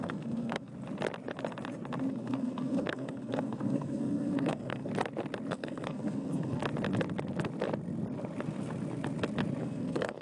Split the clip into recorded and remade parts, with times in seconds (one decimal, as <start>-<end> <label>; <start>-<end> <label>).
0.0-0.7 remade; 0.7-2.1 recorded; 2.1-4.9 remade; 4.9-5.5 recorded; 5.5-6.6 remade; 6.6-9.6 recorded; 9.6-10.2 remade